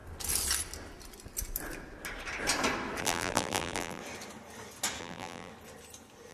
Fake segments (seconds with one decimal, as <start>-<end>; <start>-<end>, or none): 3.0-4.0; 5.0-5.5